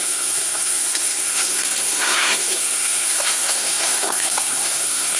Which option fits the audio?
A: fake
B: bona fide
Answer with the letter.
A